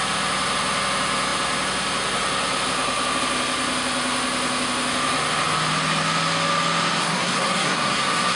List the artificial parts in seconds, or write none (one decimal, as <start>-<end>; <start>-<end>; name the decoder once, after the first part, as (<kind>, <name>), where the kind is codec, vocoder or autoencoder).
7.0-8.4 (codec, SNAC)